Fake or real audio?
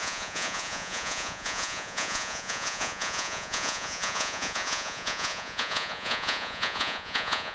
fake